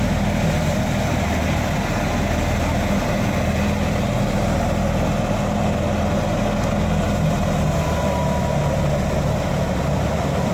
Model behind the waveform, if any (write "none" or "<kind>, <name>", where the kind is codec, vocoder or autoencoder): none